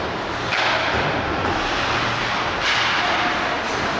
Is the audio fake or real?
real